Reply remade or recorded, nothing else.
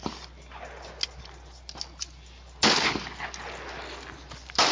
recorded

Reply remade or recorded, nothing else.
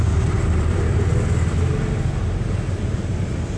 recorded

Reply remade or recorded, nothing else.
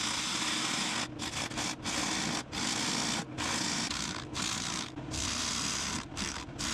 recorded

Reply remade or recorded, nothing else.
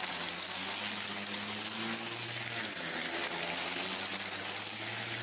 recorded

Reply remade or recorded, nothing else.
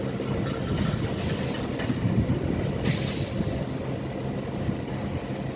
recorded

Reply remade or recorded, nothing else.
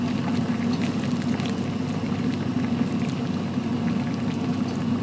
recorded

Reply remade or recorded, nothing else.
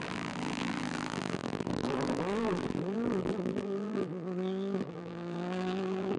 remade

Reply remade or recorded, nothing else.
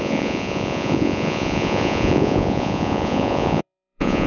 remade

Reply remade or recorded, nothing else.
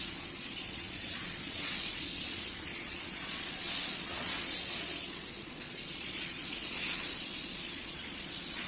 remade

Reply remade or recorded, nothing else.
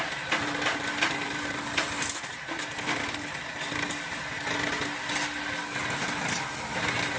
recorded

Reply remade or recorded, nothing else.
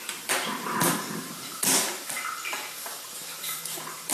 remade